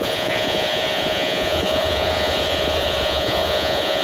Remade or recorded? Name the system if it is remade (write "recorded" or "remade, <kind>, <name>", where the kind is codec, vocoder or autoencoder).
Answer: remade, vocoder, Vocos